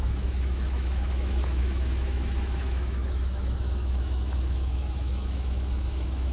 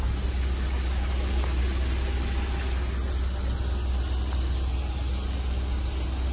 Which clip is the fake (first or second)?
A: first